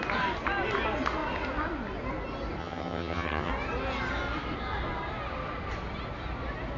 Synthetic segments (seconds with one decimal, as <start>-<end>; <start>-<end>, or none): 2.6-3.5